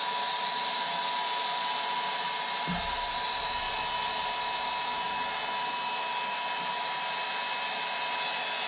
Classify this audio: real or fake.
real